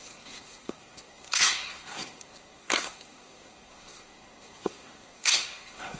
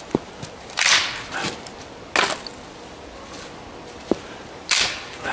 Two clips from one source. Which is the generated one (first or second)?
first